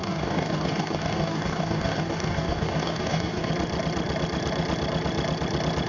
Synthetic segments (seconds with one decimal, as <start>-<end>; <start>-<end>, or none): 0.0-3.5